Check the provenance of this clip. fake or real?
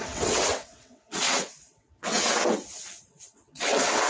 fake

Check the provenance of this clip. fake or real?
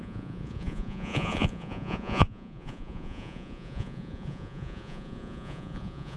fake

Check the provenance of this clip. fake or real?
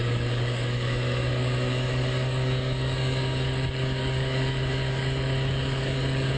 fake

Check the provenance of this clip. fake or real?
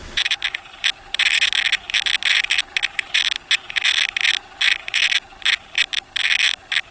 real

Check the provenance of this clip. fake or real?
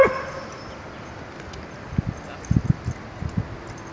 real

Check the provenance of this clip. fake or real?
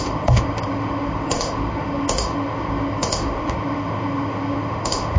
fake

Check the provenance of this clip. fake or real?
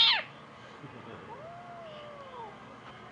real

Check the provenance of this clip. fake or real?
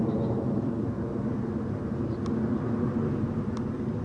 real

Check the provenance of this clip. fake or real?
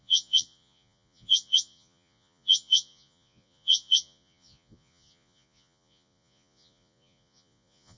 fake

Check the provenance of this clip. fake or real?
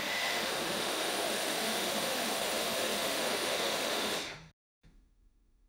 fake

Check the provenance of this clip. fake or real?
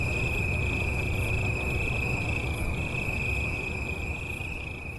fake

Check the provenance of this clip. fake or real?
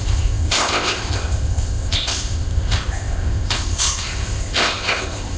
fake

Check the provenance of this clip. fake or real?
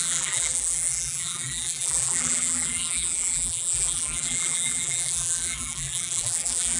fake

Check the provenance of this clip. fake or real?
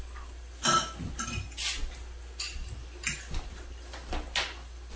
real